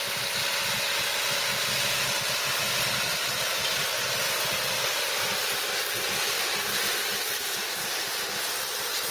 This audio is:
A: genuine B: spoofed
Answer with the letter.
A